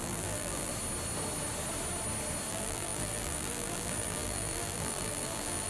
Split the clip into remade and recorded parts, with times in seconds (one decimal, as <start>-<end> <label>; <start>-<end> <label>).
0.0-0.7 remade; 0.7-2.5 recorded; 2.5-5.7 remade